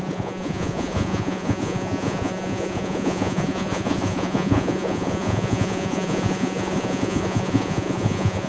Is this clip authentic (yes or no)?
no